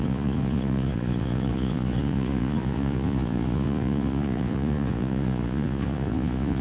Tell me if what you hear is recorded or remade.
remade